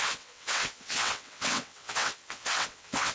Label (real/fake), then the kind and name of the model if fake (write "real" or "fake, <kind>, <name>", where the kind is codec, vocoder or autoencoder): fake, vocoder, WaveNeXt